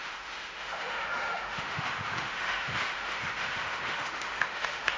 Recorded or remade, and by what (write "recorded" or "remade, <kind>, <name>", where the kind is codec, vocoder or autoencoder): remade, autoencoder, DAC-VAE